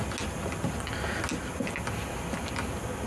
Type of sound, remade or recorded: recorded